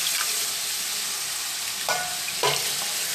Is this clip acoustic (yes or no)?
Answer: yes